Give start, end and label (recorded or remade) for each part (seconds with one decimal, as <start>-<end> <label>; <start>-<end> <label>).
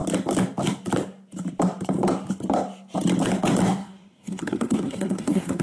0.0-3.8 recorded; 3.8-5.6 remade